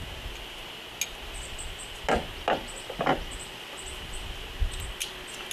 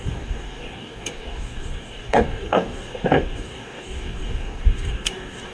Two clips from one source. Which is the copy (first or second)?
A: second